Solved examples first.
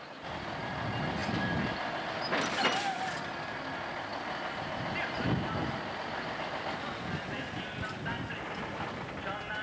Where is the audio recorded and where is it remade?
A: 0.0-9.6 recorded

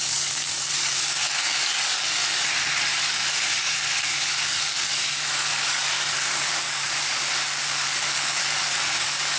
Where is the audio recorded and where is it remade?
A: 0.0-2.2 remade; 2.2-3.0 recorded; 3.0-9.4 remade

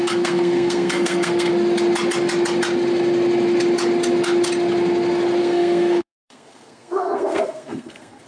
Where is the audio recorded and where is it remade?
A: 0.0-1.5 remade; 1.5-5.4 recorded; 5.4-8.3 remade

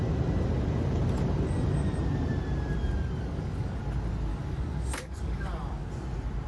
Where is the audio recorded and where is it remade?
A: 0.0-3.2 recorded; 3.2-3.8 remade; 3.8-4.3 recorded; 4.3-5.9 remade; 5.9-6.5 recorded

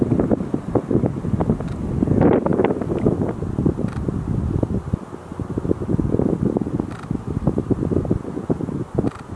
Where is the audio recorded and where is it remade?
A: 0.0-9.4 recorded

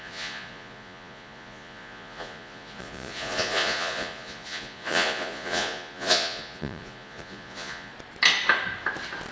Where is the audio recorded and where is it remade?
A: 0.0-7.9 remade; 7.9-9.3 recorded

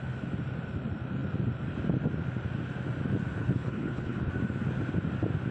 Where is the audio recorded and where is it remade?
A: 0.0-3.4 recorded; 3.4-4.3 remade; 4.3-5.5 recorded

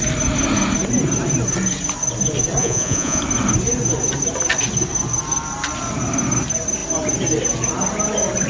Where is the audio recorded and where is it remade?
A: 0.0-2.6 recorded; 2.6-3.2 remade; 3.2-8.5 recorded